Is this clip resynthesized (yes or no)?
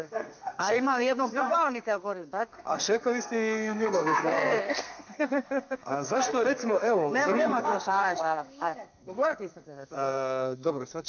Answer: yes